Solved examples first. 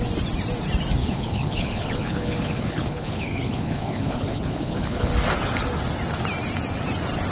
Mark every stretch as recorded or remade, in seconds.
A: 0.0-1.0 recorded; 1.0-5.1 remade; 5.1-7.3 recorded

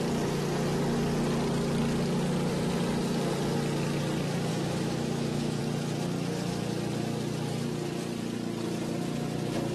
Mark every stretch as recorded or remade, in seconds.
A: 0.0-4.5 recorded; 4.5-5.6 remade; 5.6-9.7 recorded

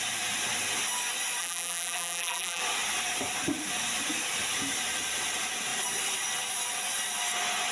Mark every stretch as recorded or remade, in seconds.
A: 0.0-1.4 recorded; 1.4-2.6 remade; 2.6-7.7 recorded

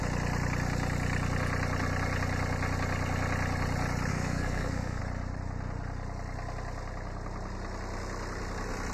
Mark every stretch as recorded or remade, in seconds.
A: 0.0-4.1 recorded; 4.1-5.0 remade; 5.0-8.9 recorded

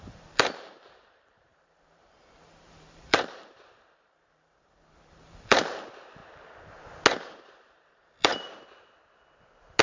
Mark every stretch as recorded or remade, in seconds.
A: 0.0-6.2 remade; 6.2-7.3 recorded; 7.3-8.3 remade; 8.3-9.8 recorded